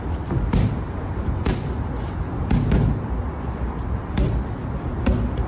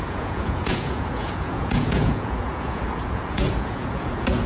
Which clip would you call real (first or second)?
first